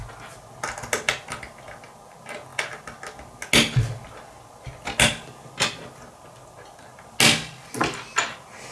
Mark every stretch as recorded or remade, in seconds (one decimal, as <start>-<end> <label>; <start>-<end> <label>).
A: 0.0-8.7 recorded